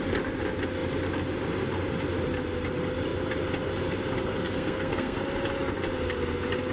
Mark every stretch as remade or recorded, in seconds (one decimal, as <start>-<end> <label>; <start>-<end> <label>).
0.0-4.4 recorded; 4.4-5.2 remade; 5.2-6.7 recorded